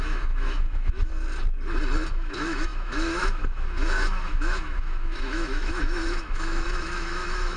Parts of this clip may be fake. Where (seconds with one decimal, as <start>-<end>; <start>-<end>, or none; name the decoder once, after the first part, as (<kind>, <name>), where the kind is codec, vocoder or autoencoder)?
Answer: 0.0-1.1 (autoencoder, DAC-VAE); 2.1-7.6